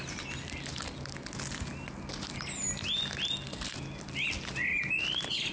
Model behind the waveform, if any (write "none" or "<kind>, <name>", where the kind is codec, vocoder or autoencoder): none